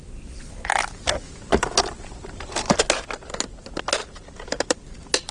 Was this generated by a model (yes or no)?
no